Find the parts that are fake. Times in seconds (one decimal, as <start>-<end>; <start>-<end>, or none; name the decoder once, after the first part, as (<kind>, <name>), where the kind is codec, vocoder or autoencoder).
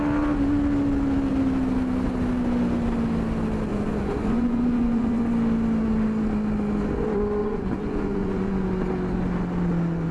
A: 3.7-5.2 (vocoder, Vocos); 7.4-8.5